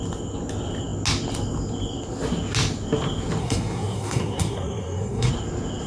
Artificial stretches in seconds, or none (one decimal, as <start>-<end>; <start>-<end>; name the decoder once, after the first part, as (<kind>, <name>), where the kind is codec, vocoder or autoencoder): 3.4-5.3 (codec, SNAC)